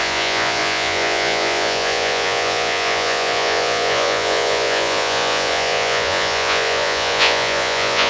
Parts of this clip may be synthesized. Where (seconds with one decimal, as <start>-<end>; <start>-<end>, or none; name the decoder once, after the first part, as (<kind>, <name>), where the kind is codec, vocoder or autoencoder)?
0.0-8.1 (vocoder, Vocos)